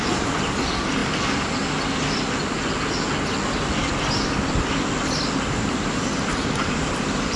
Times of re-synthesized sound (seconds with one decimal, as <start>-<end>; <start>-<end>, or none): 0.0-1.0; 5.4-7.4

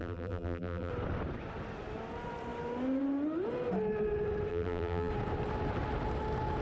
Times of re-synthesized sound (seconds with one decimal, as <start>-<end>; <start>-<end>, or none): 0.0-0.9; 4.5-5.1

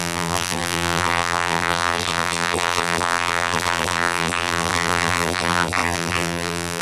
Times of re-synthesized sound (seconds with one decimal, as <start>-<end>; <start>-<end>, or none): 0.0-6.8

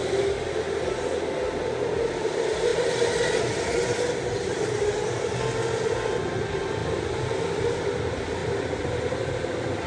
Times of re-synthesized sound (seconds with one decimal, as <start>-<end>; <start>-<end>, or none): none

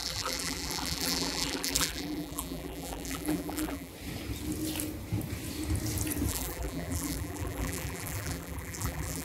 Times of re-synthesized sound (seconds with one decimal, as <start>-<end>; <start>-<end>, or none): 0.0-3.9; 6.3-9.2

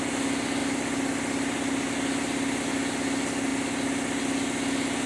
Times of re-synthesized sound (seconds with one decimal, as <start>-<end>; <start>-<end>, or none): 0.6-2.7; 3.5-4.2